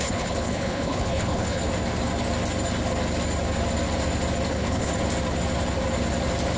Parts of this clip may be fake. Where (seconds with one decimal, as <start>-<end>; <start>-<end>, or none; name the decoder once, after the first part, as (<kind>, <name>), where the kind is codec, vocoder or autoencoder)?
0.0-1.6 (codec, HILCodec); 4.5-4.9